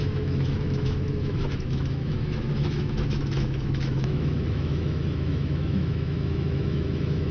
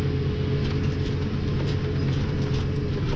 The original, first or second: second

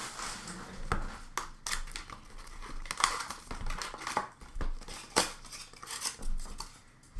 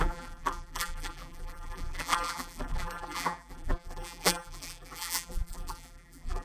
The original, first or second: first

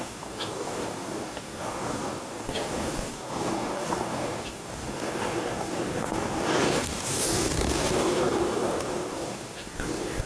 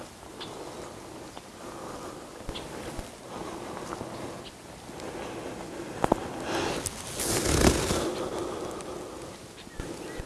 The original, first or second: second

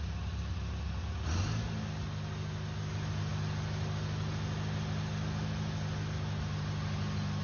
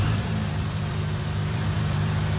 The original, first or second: first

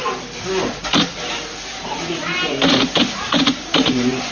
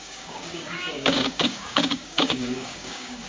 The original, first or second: first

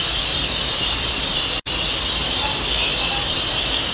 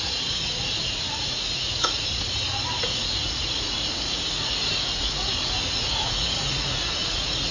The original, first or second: first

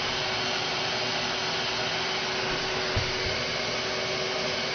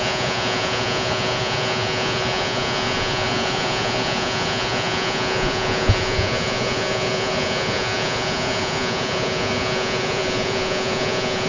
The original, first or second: first